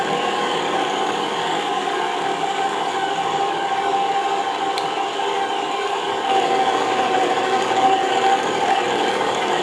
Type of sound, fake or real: fake